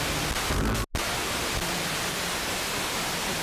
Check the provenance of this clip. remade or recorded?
recorded